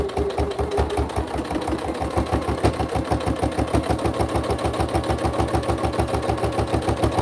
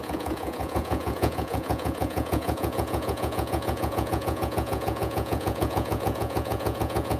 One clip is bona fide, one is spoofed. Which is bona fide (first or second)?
first